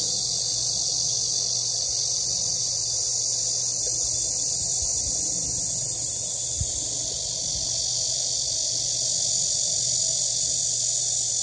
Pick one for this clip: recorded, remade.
recorded